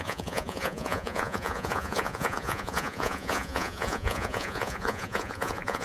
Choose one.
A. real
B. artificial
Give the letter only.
B